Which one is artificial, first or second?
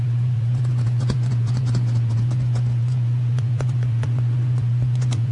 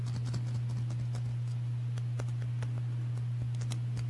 first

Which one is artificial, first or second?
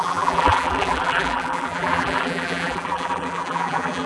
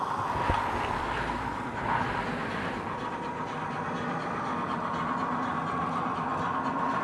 first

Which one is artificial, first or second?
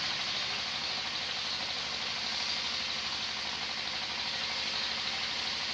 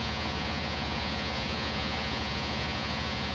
second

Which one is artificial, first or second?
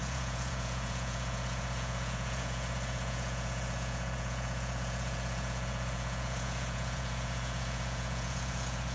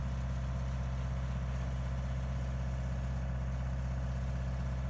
first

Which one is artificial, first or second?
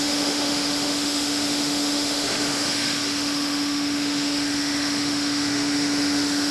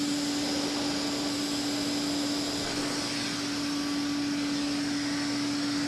first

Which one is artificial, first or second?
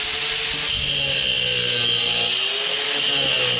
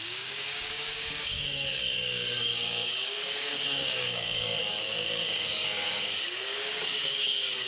second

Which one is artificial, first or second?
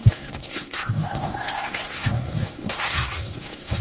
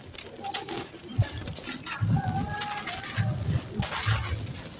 first